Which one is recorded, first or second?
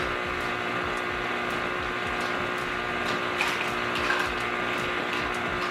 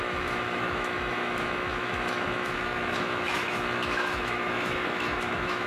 first